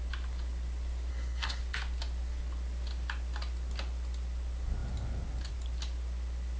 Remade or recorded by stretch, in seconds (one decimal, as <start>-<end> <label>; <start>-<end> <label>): 0.0-1.1 recorded; 1.1-1.6 remade; 1.6-6.6 recorded